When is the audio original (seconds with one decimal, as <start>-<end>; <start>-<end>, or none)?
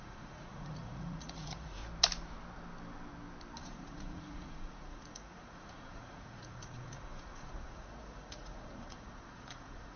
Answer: 1.8-3.6